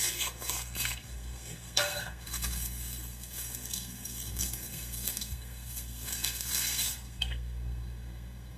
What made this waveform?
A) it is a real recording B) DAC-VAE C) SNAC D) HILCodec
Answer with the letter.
C